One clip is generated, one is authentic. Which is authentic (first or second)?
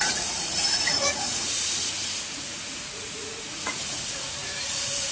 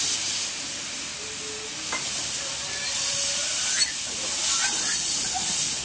second